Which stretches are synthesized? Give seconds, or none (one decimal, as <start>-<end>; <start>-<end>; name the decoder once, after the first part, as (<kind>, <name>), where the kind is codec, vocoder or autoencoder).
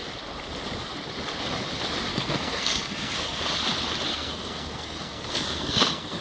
2.1-3.5 (codec, SNAC); 4.1-6.2